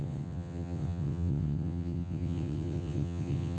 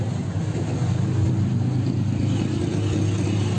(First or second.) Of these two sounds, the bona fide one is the second